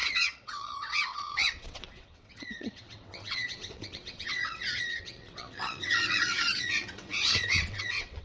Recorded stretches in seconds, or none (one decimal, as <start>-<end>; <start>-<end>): none

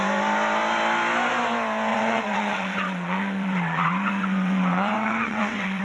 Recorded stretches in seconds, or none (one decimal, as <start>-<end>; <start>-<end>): 0.0-1.9